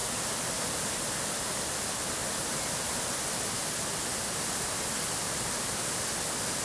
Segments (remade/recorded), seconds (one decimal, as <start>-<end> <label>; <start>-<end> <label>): 0.0-2.2 remade; 2.2-5.4 recorded; 5.4-6.6 remade